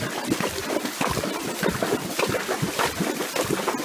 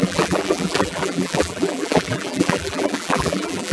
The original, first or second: first